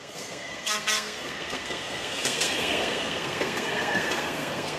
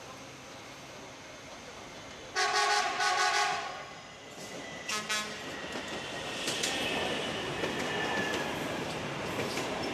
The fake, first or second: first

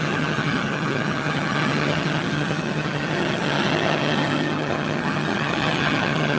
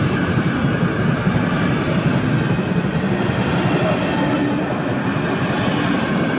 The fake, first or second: first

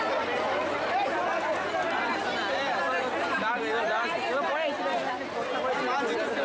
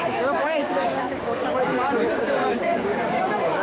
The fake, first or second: second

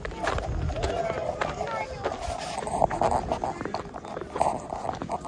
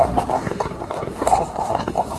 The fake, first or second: second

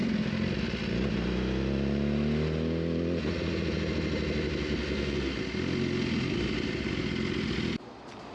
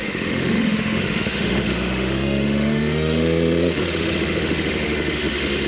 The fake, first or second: second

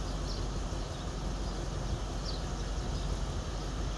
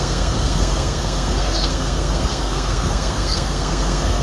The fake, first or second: second